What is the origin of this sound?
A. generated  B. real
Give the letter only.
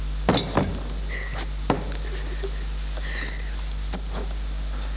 B